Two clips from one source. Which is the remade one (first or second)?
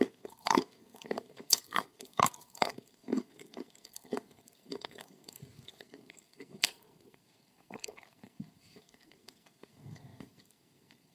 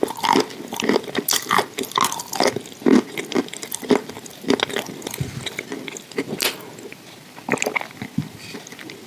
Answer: first